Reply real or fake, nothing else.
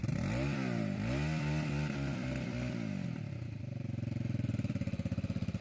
fake